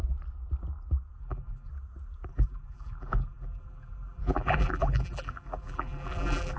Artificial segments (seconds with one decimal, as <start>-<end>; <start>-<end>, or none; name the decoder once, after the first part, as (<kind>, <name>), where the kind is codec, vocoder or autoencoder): 1.2-1.7 (vocoder, BigVGAN v2); 2.3-6.6